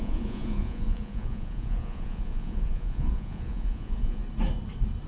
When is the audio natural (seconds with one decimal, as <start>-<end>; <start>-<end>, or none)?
4.2-5.1